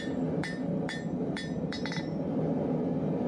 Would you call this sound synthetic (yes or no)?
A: yes